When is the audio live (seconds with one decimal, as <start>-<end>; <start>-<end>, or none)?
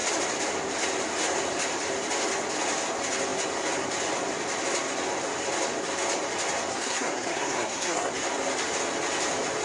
0.0-6.7; 8.1-9.6